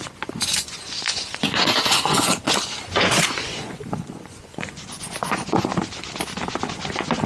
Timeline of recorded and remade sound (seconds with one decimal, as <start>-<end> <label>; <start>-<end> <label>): 0.0-5.7 remade; 5.7-6.7 recorded; 6.7-7.3 remade